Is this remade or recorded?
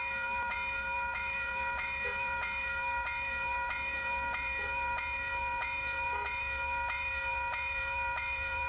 remade